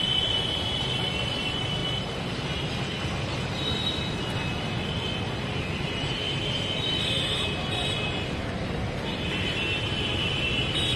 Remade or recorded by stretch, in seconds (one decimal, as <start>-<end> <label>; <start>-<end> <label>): 0.0-11.0 recorded